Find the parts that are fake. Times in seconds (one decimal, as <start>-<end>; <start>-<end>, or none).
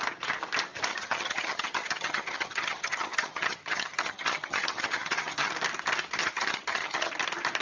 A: 0.9-5.5; 6.2-7.1